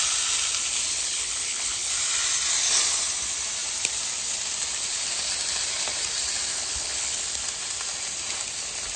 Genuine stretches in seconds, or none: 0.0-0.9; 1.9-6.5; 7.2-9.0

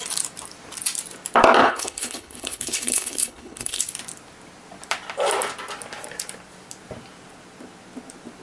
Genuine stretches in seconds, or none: 0.0-1.6; 3.8-8.4

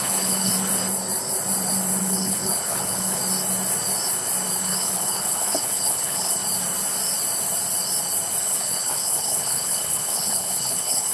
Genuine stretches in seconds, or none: 0.5-2.0; 3.2-4.6; 6.4-8.4